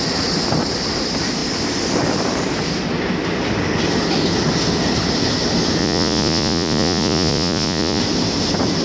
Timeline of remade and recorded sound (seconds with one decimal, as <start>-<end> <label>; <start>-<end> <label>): 0.0-5.8 recorded; 5.8-8.0 remade; 8.0-8.8 recorded